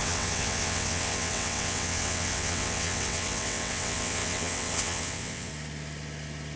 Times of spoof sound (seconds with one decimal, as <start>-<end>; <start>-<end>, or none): 0.0-5.5